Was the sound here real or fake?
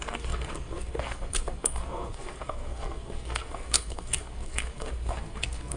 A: fake